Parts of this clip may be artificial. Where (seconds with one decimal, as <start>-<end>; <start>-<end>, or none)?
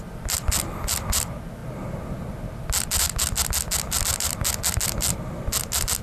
none